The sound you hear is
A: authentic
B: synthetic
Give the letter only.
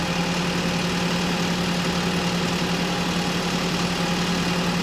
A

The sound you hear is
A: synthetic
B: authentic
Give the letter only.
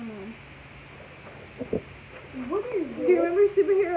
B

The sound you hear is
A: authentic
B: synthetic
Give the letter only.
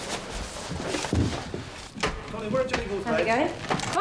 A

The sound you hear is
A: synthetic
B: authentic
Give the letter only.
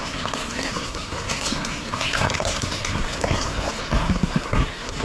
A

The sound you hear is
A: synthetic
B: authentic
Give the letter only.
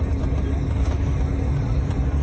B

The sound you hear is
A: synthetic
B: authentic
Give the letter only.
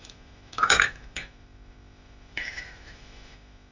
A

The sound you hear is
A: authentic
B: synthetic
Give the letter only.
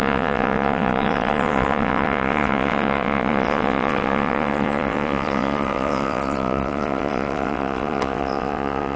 B